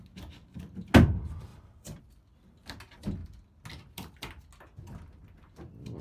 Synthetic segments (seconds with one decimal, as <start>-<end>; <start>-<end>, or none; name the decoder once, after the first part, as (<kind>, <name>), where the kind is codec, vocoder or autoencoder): 1.5-2.0 (vocoder, BigVGAN v2)